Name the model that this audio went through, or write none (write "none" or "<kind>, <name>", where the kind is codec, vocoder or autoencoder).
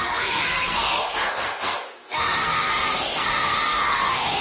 codec, SNAC